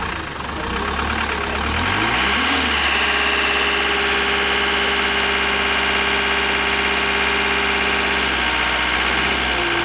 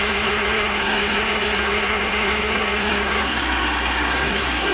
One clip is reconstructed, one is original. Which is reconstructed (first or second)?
second